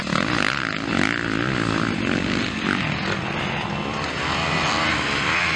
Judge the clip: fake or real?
real